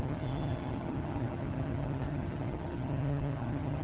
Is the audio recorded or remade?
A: remade